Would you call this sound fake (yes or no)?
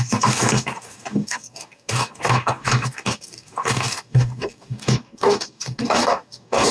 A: yes